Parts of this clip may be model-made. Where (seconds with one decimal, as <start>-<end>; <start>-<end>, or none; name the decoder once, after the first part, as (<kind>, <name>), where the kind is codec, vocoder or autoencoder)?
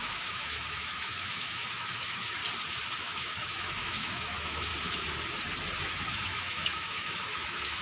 0.0-2.4 (autoencoder, DAC-VAE); 3.0-4.7; 5.8-7.8